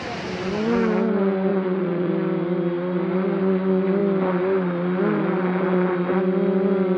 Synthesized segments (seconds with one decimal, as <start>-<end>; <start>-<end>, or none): 1.5-2.1

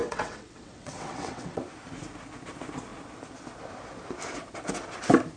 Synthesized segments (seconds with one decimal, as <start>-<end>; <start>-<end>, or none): 0.0-1.6

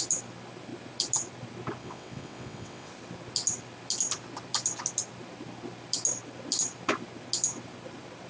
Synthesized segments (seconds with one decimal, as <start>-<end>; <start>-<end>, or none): 1.8-2.9

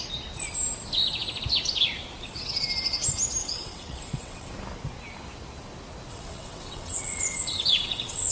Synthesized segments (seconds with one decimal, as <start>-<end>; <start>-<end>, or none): 3.4-4.5; 6.1-8.3

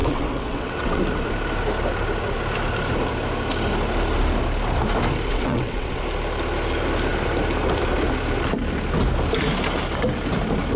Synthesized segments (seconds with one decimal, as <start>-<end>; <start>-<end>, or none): 0.0-1.0; 5.3-6.0

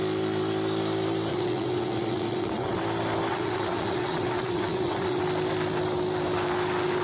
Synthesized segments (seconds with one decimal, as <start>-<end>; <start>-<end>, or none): 1.3-2.8; 3.3-5.2

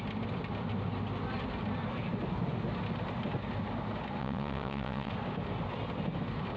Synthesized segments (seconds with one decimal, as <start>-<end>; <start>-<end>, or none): 4.2-5.1

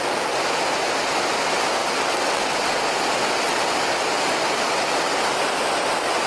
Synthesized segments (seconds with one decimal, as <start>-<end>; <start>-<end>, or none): 1.8-2.4